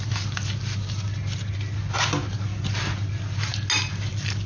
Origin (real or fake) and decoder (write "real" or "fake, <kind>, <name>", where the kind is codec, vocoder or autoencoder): real